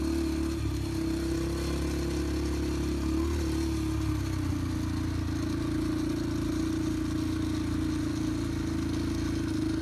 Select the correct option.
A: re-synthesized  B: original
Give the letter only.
B